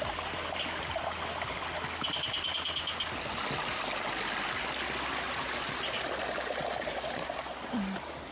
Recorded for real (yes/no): yes